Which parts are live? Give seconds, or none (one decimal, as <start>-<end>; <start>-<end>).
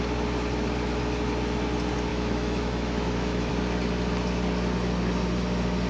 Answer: 0.0-2.1; 3.5-5.9